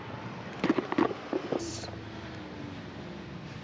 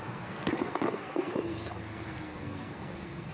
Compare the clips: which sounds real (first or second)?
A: first